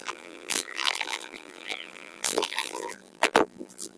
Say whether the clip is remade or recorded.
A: remade